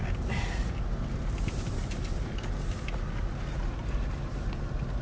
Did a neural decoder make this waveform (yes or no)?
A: no